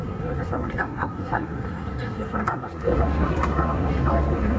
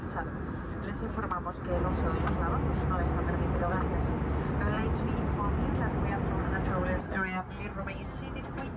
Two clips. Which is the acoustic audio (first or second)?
second